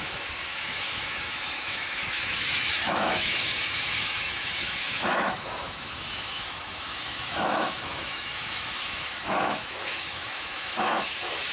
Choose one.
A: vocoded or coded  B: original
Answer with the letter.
A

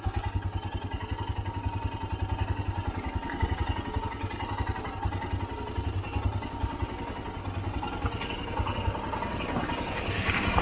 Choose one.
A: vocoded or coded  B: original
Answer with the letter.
B